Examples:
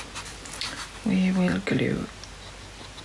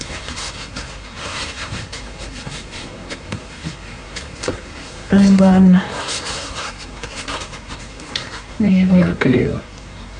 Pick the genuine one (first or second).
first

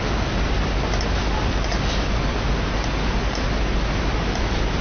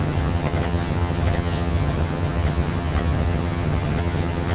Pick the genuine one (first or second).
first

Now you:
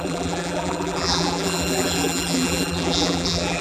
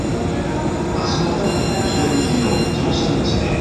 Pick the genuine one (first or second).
second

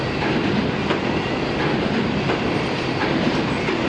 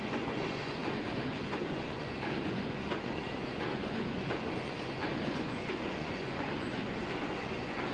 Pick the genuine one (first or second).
first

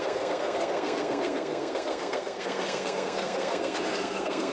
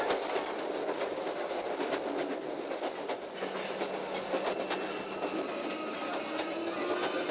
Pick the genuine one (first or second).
second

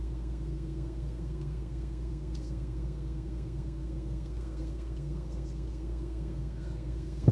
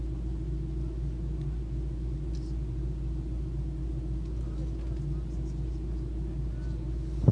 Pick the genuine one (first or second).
second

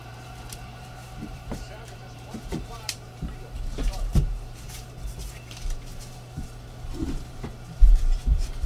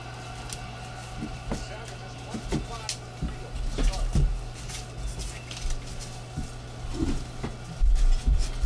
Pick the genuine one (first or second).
second